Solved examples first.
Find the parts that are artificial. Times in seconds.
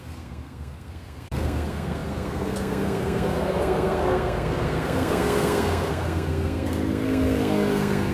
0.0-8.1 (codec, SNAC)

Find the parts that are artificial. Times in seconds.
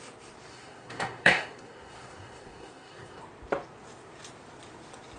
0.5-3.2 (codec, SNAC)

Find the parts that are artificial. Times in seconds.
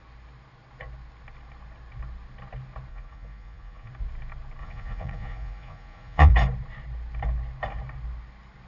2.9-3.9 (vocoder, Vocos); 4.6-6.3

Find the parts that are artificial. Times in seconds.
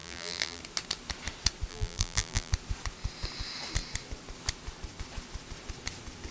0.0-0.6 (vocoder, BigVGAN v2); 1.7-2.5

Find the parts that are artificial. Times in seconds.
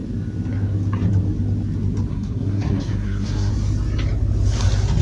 2.1-3.5 (codec, SNAC)